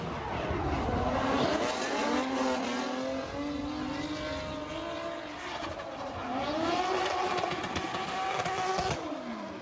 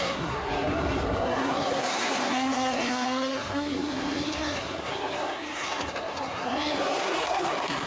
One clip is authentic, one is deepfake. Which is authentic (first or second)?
first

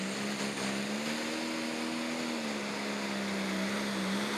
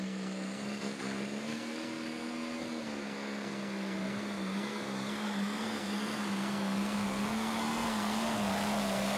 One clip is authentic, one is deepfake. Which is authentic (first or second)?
first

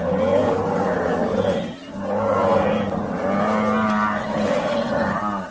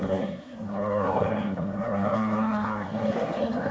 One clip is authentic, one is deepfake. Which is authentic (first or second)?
first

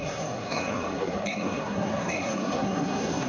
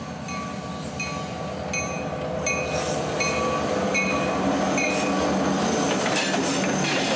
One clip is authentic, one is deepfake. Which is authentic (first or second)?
second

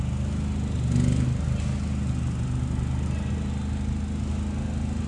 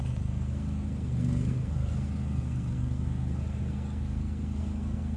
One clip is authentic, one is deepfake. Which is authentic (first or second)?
first